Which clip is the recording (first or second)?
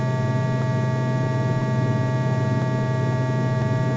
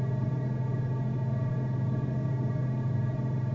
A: first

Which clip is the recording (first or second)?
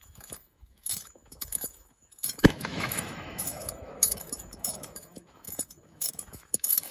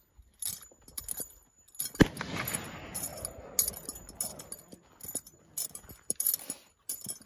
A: second